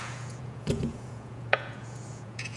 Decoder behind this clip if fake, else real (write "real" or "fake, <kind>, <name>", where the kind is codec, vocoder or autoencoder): fake, vocoder, Vocos